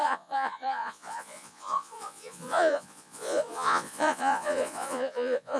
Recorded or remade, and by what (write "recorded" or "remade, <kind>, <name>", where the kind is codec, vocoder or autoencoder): remade, vocoder, Vocos